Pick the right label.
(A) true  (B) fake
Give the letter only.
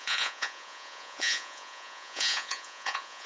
B